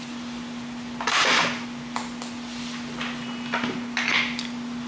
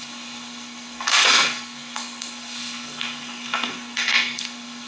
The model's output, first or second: second